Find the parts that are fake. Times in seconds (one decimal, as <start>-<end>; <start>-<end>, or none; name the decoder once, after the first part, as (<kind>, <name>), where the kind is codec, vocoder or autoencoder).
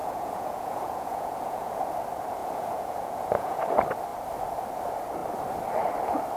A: 0.0-1.8 (vocoder, Vocos); 2.4-3.6